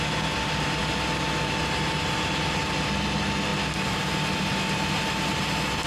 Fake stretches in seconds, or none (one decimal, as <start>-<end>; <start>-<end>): none

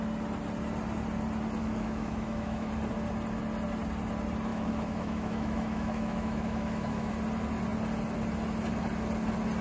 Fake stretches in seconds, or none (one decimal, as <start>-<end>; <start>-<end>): 1.6-2.7; 4.5-7.1

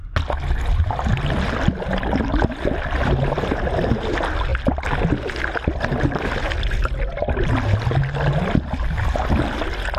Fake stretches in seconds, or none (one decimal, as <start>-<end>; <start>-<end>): none

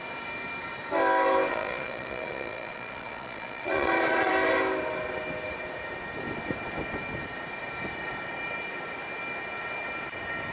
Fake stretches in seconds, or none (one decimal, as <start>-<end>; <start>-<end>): 1.5-4.3

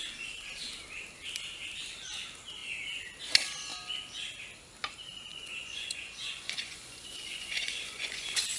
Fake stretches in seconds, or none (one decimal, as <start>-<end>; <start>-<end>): 5.3-8.6